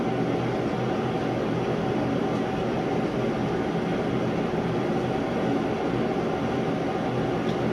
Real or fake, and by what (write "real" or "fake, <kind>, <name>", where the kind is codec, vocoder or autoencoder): real